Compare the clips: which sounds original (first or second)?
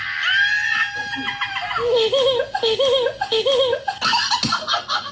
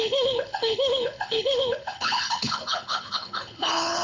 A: first